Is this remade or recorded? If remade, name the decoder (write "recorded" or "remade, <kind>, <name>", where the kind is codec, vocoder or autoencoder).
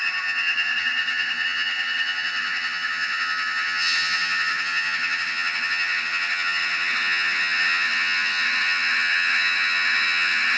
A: remade, vocoder, HiFi-GAN